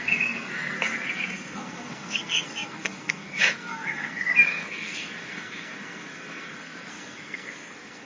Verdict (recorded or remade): remade